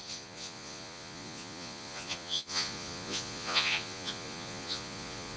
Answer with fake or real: fake